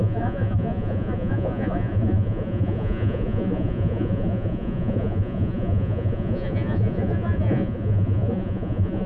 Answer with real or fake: fake